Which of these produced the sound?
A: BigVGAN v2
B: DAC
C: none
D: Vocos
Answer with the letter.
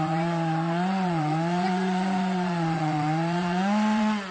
D